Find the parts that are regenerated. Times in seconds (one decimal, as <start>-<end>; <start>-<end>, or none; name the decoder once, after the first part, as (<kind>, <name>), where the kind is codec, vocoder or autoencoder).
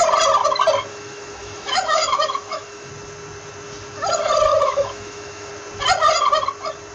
0.9-2.9 (autoencoder, DAC-VAE); 4.5-5.5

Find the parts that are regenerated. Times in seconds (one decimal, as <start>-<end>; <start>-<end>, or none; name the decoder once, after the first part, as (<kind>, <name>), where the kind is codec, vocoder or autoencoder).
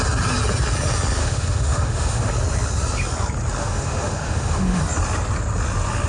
1.2-2.3 (autoencoder, DAC-VAE); 3.6-4.8